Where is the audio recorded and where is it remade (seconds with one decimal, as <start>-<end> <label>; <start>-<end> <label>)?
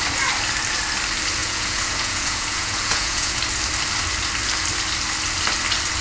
0.0-1.4 recorded; 1.4-3.4 remade; 3.4-6.0 recorded